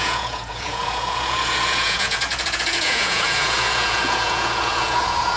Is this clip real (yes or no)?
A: no